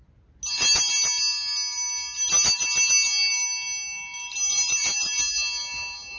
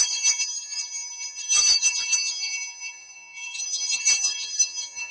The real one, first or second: first